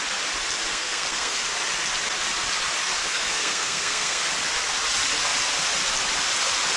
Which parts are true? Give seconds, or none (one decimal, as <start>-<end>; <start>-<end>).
0.0-0.7; 1.4-3.0; 4.2-6.8